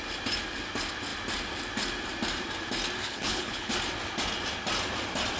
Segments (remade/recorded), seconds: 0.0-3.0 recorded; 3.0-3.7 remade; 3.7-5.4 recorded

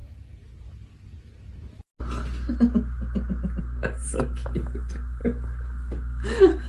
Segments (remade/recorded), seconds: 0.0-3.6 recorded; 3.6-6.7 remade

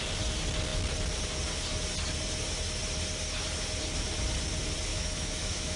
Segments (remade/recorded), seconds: 0.0-4.9 recorded; 4.9-5.8 remade

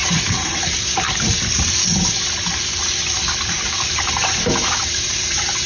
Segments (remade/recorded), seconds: 0.0-3.4 recorded; 3.4-5.7 remade

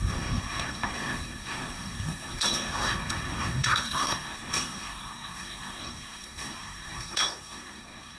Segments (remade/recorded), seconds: 0.0-8.2 remade